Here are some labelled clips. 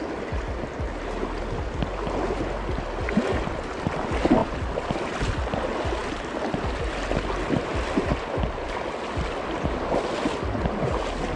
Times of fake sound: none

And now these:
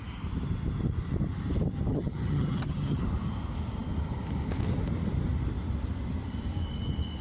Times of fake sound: 1.9-3.0

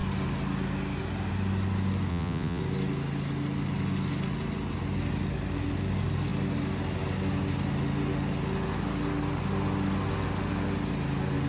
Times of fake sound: 2.1-2.6

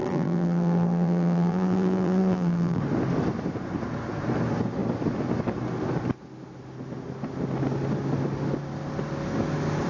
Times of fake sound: 0.0-2.8

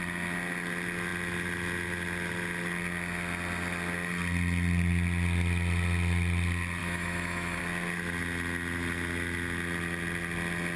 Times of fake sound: 6.8-7.6

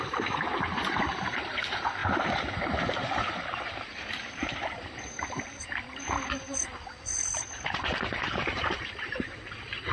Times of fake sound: 0.0-9.9

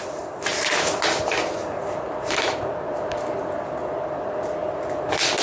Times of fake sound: 0.0-5.4

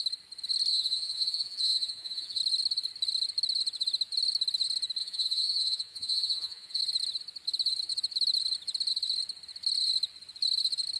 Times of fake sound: 0.7-2.4; 5.0-6.8